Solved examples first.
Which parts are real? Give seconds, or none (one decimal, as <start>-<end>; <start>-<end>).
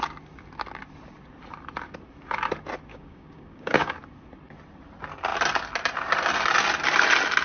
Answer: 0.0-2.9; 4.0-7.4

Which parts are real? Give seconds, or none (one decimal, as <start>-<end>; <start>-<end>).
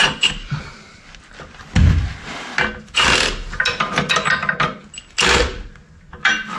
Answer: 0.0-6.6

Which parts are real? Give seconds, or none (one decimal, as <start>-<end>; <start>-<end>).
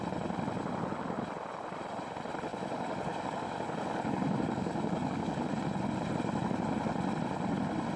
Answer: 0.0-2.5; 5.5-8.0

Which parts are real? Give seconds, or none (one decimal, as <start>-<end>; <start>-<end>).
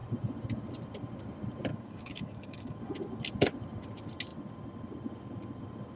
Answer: 0.0-1.7; 2.8-6.0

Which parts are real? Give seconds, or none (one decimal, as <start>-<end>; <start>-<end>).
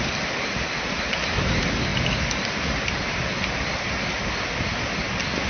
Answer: 0.0-5.5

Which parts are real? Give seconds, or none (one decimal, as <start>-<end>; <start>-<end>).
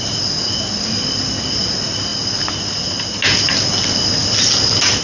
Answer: 0.0-5.0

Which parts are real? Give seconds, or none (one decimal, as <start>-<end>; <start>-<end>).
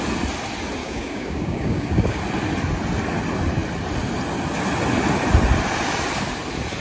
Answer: 0.0-0.8; 2.2-6.8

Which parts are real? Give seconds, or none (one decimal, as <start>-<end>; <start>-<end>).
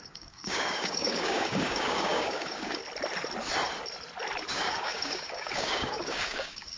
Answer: 2.8-4.5